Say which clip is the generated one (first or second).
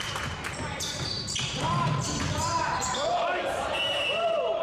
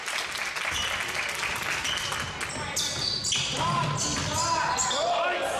first